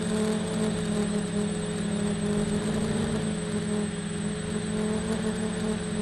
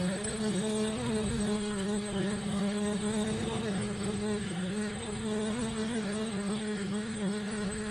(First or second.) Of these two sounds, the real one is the first